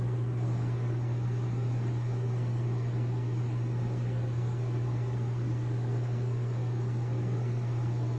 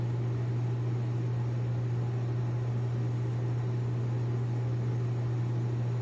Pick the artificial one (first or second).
first